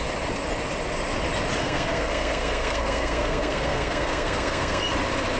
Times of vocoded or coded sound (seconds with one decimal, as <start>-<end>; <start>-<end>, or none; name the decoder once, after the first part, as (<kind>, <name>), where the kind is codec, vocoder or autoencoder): 1.6-4.8 (codec, SNAC)